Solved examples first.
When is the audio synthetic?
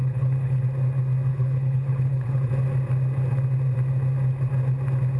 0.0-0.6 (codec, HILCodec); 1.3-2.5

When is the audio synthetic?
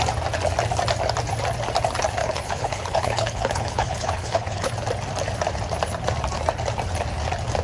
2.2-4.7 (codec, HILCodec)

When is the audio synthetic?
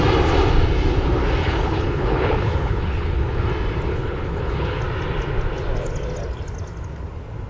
1.4-3.5 (codec, HILCodec); 3.9-4.8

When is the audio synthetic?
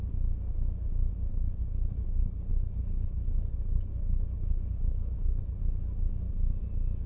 1.3-5.6 (codec, HILCodec)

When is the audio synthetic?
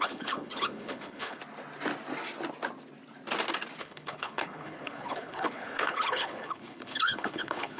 0.0-1.4 (codec, HILCodec); 3.8-7.8